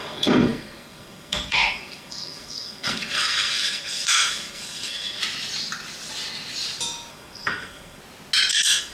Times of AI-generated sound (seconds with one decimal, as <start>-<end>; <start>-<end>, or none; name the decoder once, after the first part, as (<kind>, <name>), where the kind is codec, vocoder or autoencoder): 0.0-5.2 (codec, SNAC); 7.1-8.0; 8.5-8.9